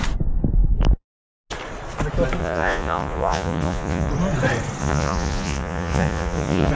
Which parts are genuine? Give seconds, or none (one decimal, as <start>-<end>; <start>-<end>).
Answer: 0.0-2.4; 4.1-4.8